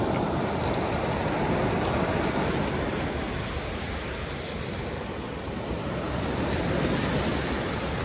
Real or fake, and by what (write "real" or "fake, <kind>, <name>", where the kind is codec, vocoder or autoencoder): real